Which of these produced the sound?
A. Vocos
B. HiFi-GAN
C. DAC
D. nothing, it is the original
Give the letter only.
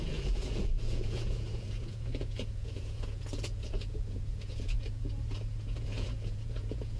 A